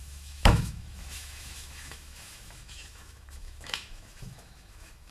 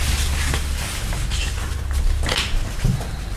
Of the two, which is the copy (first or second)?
first